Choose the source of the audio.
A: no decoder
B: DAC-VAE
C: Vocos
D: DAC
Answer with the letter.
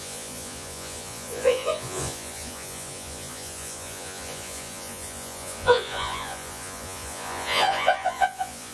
C